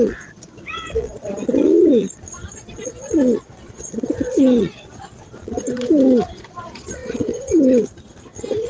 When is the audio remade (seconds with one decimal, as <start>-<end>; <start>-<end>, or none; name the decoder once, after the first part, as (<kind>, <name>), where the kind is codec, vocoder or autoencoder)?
0.0-8.7 (vocoder, Vocos)